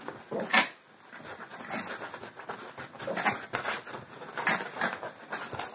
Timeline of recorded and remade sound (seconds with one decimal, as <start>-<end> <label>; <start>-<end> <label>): 0.0-5.7 recorded